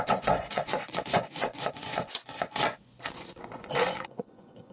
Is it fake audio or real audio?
fake